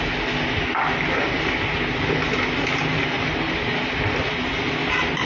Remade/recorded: recorded